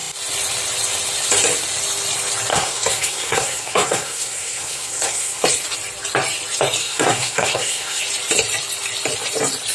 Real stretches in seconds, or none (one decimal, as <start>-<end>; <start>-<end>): 0.0-2.5; 5.4-6.8; 8.0-9.7